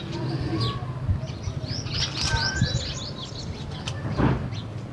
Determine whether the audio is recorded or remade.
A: recorded